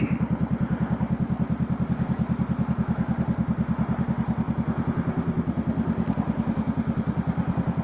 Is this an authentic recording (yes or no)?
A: yes